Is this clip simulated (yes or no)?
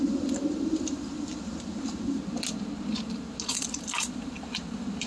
no